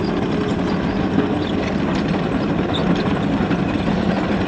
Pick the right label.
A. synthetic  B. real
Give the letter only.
B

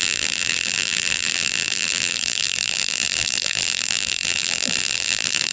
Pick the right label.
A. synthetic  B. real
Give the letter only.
A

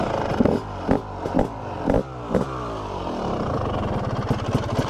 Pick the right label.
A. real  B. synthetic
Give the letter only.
A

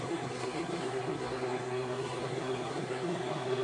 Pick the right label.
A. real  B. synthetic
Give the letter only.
B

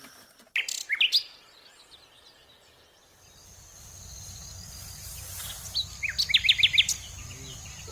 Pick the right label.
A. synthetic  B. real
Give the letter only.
B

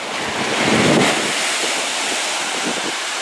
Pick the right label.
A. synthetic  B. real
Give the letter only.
B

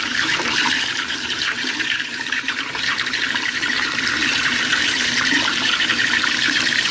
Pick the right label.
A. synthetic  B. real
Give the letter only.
A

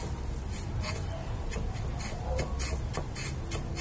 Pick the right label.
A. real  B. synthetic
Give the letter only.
A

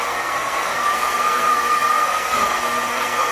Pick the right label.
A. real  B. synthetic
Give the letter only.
B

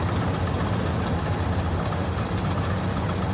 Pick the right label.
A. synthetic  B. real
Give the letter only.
B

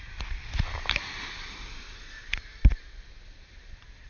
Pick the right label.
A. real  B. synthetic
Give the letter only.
A